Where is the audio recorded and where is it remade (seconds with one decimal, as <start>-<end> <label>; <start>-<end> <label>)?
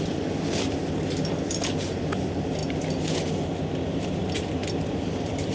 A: 0.0-5.5 recorded